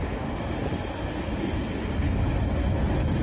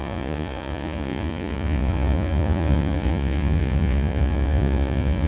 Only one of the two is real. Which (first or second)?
first